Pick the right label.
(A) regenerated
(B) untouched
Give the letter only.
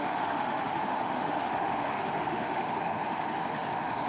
A